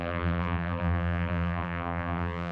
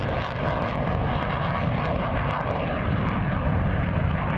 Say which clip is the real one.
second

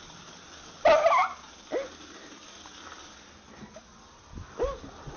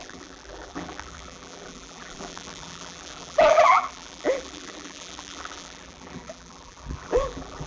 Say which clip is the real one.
first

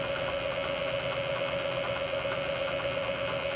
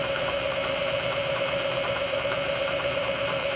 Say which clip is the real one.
first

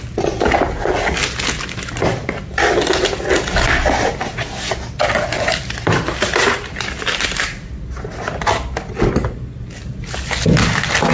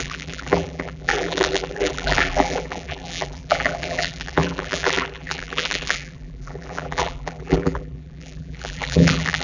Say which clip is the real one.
first